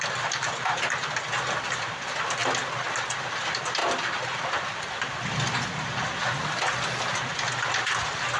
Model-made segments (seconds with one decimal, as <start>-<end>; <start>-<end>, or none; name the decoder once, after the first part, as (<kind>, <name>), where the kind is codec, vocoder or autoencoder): 3.8-5.1 (vocoder, BigVGAN v2)